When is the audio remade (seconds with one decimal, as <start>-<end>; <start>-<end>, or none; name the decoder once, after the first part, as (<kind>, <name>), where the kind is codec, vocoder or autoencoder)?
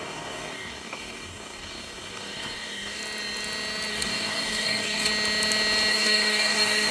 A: 0.0-3.0 (codec, DAC); 3.9-5.1; 5.9-6.9